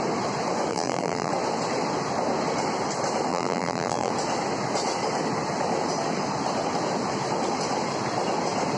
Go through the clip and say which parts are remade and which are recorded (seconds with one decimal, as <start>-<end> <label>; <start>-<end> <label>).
0.0-0.7 recorded; 0.7-1.3 remade; 1.3-3.3 recorded; 3.3-4.1 remade; 4.1-8.8 recorded